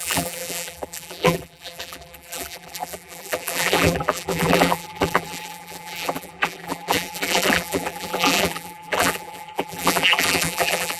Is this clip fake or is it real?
fake